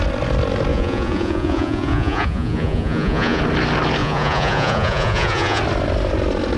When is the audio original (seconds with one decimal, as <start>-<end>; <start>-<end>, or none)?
0.0-0.7; 3.4-4.0; 5.6-6.6